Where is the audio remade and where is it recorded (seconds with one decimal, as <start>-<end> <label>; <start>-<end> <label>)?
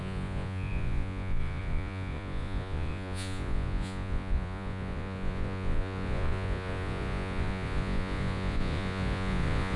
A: 0.0-9.8 remade